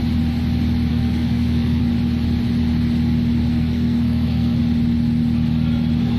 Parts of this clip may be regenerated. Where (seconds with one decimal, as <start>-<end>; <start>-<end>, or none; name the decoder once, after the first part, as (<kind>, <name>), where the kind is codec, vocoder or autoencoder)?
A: 0.9-1.8 (codec, SNAC); 3.5-4.6